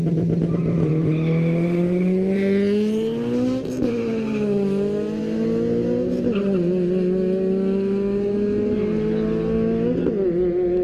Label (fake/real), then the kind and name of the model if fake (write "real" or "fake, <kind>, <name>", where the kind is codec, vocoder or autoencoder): real